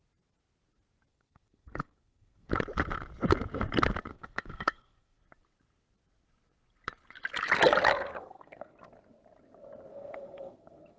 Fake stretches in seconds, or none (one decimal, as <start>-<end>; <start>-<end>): 1.1-2.5; 4.1-5.2; 7.9-8.8; 9.9-11.0